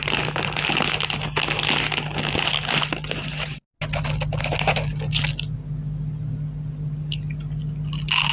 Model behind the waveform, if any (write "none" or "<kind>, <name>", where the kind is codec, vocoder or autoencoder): none